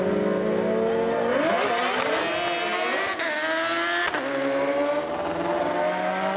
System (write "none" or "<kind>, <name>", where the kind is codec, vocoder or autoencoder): none